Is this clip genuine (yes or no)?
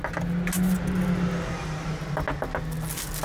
yes